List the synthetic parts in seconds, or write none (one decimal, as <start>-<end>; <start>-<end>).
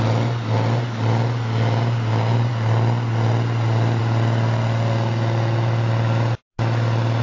none